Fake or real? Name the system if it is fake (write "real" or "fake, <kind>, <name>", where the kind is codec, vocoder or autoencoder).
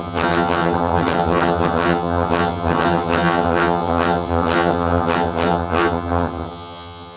fake, vocoder, HiFi-GAN